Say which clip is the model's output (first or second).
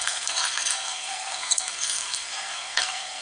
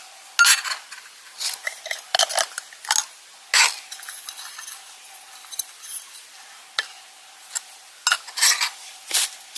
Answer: first